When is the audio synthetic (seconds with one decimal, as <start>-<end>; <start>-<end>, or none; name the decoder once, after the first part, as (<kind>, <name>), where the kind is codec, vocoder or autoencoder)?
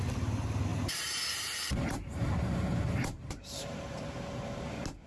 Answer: 0.7-3.8 (vocoder, BigVGAN v2)